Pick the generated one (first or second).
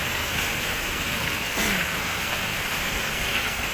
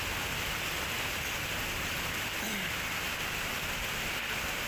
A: first